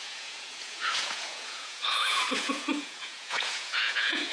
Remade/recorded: remade